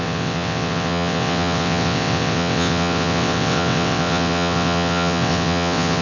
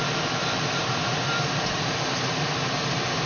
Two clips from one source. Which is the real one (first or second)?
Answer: second